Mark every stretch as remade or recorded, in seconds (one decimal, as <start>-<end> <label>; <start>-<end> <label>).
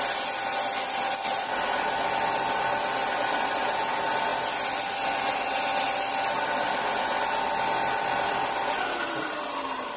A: 0.0-10.0 recorded